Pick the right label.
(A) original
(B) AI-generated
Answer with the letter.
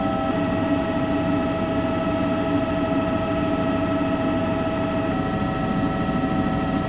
A